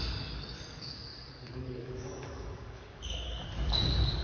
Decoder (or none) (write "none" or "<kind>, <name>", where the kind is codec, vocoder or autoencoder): codec, DAC